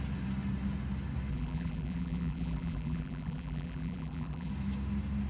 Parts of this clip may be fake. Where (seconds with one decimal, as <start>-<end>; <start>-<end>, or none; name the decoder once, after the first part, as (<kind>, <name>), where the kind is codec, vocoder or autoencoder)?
1.3-4.5 (vocoder, BigVGAN v2)